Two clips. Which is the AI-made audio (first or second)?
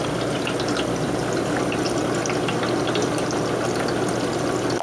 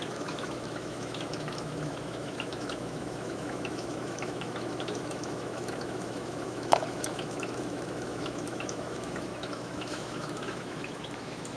second